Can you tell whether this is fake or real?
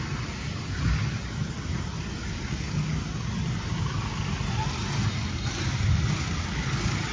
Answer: real